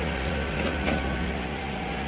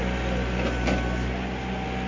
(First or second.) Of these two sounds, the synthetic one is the first